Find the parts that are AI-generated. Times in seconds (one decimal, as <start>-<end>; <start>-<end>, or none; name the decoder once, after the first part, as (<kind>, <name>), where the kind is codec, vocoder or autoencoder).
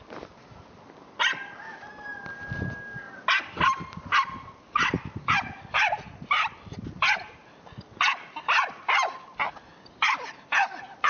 none